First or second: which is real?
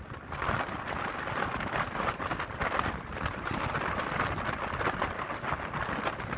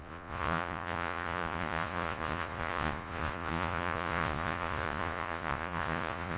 first